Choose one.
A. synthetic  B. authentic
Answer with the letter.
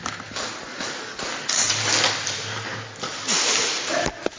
B